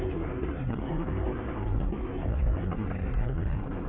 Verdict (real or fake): fake